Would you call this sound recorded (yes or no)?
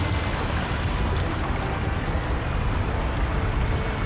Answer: yes